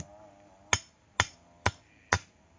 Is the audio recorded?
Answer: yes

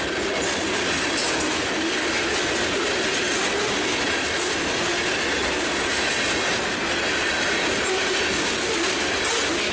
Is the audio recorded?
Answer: yes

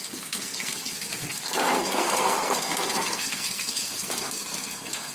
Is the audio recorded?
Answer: no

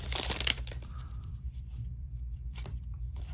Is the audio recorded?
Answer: no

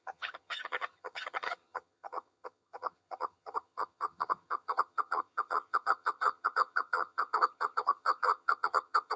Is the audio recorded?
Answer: no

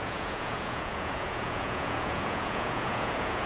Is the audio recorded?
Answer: no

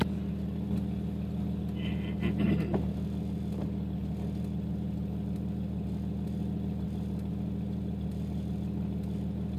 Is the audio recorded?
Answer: yes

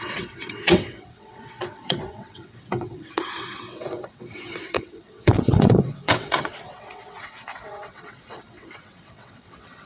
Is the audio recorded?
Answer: no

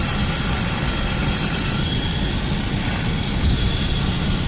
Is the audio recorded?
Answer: yes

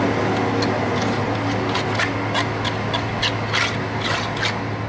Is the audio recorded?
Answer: yes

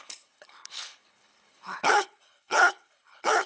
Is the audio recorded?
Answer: no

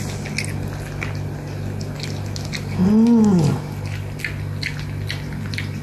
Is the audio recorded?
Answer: yes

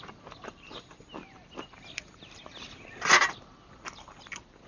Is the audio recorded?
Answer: yes